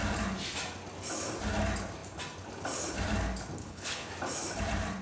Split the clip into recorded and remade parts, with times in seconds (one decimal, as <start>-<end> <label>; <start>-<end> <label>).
0.0-3.6 recorded; 3.6-4.1 remade; 4.1-5.0 recorded